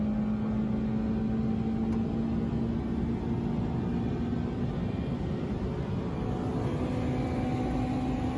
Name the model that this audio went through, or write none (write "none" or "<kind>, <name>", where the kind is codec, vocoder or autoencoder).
none